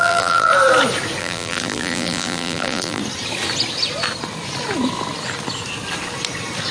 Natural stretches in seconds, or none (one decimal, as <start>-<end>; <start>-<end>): 0.5-1.2; 3.0-6.7